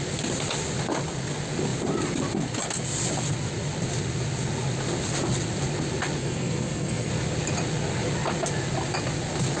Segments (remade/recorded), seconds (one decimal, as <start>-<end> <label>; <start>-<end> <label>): 0.0-6.2 recorded; 6.2-7.1 remade; 7.1-9.6 recorded